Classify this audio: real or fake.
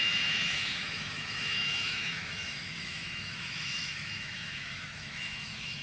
fake